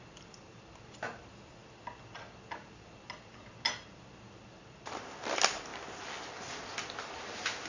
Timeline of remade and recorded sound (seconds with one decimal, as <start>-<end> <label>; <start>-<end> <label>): 0.0-7.7 recorded